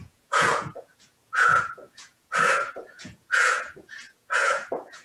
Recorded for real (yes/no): no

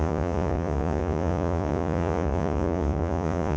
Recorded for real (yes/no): no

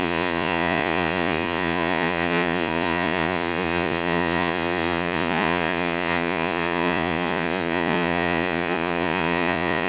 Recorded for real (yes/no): no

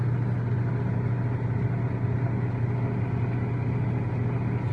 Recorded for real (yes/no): yes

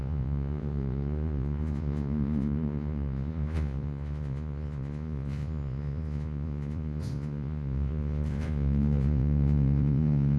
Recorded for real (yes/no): no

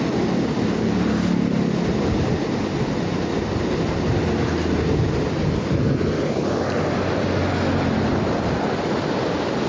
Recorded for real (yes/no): yes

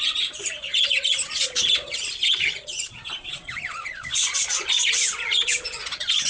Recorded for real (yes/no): no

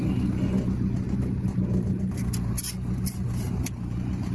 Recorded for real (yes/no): yes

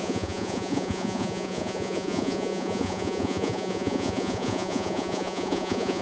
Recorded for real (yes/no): no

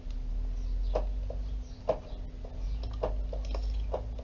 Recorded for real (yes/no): yes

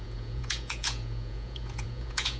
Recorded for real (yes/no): no